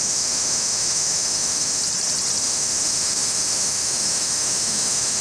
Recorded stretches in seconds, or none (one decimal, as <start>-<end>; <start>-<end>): 1.8-2.4